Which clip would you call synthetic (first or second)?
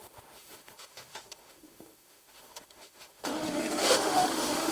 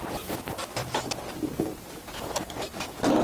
first